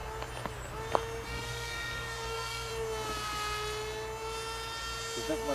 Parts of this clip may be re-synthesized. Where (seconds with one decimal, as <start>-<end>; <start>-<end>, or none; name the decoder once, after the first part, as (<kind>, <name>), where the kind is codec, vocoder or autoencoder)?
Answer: 1.3-2.7 (codec, SNAC)